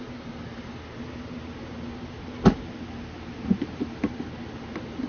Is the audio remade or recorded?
recorded